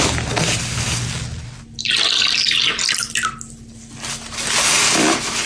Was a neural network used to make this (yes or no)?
no